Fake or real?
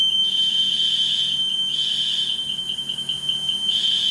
real